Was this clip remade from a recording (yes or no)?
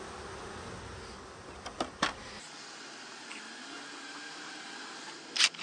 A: no